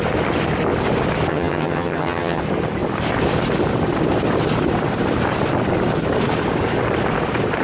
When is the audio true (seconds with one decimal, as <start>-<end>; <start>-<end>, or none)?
0.0-1.3; 2.4-7.6